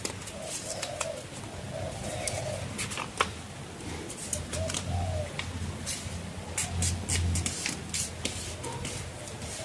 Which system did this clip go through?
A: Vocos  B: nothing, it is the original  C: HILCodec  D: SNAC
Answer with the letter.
B